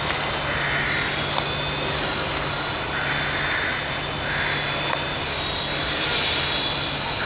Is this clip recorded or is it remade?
recorded